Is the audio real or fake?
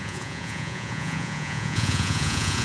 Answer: fake